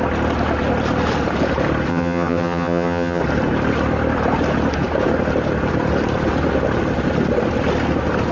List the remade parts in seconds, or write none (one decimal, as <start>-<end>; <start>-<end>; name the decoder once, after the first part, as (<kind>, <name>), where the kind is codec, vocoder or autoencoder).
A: 1.9-3.2 (vocoder, HiFi-GAN)